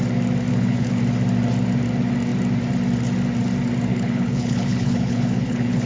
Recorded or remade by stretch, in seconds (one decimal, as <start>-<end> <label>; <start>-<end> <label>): 0.0-0.5 recorded; 0.5-1.0 remade; 1.0-3.9 recorded; 3.9-5.9 remade